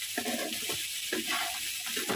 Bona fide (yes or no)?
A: yes